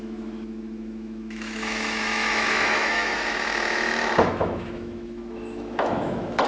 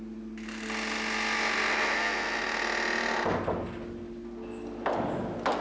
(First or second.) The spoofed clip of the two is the first